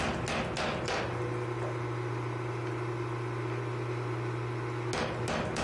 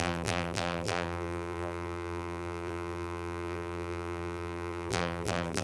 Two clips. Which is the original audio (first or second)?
first